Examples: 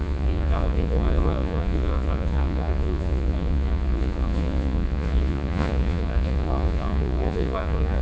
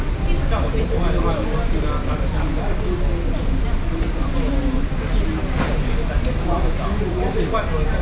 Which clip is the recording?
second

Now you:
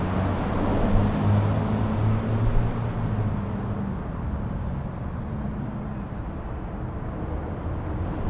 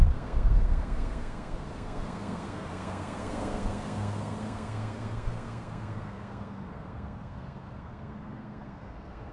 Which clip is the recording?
first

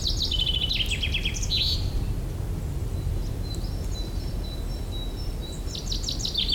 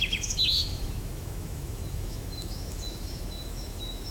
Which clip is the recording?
first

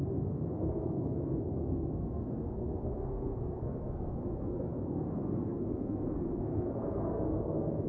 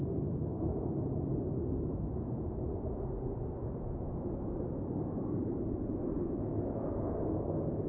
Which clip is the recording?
second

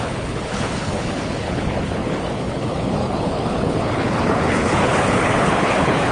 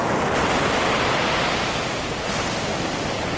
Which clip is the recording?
second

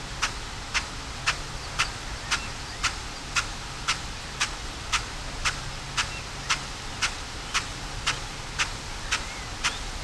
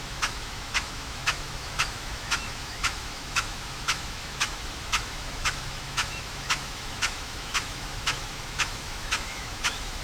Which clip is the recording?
first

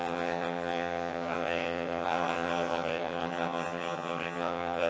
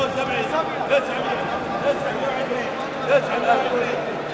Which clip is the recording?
second